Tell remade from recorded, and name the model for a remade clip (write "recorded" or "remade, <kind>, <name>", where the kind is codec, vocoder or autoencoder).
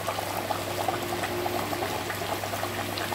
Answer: recorded